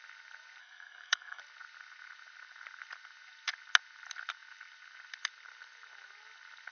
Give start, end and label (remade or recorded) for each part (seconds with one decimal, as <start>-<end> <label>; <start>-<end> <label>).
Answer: 0.0-0.6 recorded; 0.6-1.4 remade; 1.4-6.7 recorded